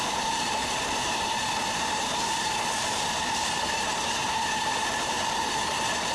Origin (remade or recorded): remade